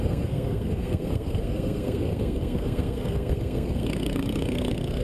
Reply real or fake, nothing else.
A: fake